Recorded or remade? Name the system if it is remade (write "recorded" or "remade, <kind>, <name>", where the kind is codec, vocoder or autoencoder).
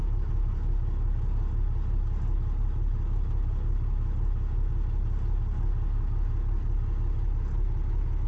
recorded